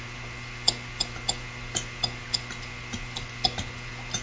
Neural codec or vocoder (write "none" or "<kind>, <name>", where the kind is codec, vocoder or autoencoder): none